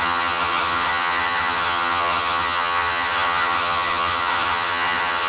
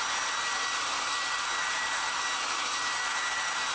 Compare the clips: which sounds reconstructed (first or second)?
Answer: first